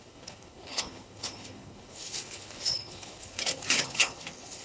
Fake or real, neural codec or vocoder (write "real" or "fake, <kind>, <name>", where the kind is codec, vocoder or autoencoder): fake, codec, HILCodec